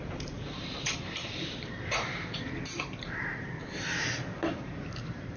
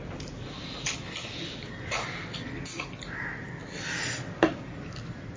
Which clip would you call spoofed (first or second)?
first